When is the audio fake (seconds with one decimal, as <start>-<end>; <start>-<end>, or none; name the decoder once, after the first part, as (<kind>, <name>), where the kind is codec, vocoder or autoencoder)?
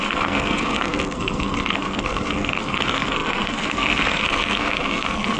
0.0-5.4 (codec, SNAC)